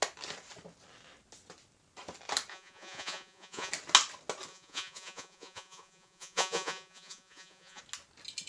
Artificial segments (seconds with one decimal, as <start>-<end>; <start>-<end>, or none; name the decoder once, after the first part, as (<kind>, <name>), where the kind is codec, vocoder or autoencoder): 2.5-3.7 (vocoder, Vocos); 4.5-7.8